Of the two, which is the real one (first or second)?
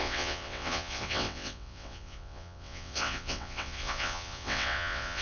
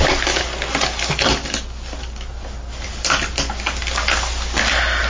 second